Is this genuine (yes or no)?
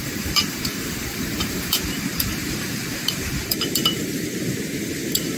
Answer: no